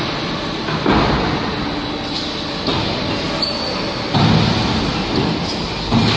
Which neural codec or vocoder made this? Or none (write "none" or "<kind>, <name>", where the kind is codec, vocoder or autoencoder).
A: none